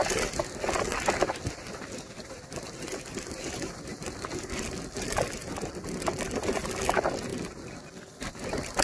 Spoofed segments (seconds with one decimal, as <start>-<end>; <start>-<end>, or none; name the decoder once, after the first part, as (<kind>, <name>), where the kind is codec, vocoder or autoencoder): none